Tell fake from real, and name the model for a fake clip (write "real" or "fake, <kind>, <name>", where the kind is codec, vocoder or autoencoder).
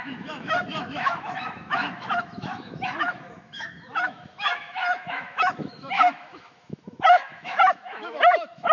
fake, autoencoder, DAC-VAE